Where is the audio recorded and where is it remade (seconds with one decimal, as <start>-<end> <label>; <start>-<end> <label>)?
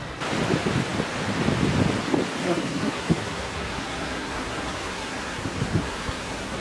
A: 0.0-2.4 recorded; 2.4-6.6 remade